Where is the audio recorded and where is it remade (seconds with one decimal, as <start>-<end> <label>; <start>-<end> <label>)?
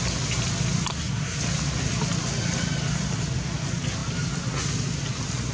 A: 0.0-0.9 recorded; 0.9-1.4 remade; 1.4-5.5 recorded